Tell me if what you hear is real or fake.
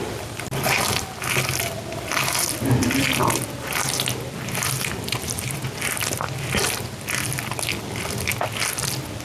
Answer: real